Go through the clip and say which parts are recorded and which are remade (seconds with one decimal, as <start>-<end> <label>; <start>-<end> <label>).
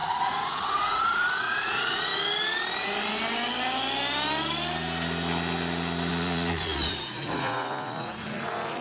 0.0-2.1 remade; 2.1-6.1 recorded; 6.1-8.8 remade